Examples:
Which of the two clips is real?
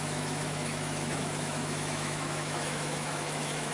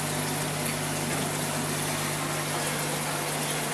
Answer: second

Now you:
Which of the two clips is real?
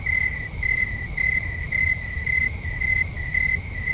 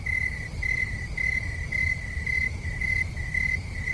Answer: second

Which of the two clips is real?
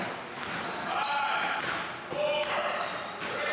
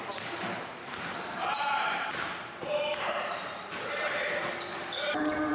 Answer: first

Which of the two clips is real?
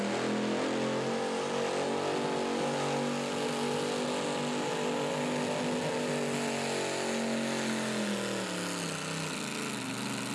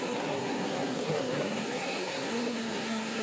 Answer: first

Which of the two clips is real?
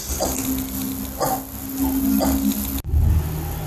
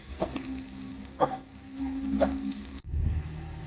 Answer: first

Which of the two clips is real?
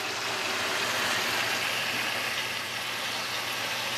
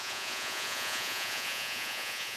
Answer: first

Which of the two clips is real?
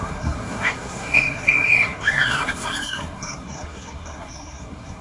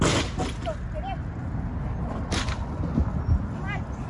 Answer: second